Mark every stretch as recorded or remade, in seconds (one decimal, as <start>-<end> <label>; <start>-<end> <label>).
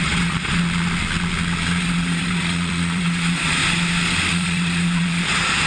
0.0-0.6 remade; 0.6-1.8 recorded; 1.8-3.6 remade; 3.6-4.3 recorded; 4.3-5.7 remade